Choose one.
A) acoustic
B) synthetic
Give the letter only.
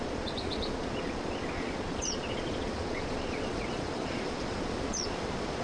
B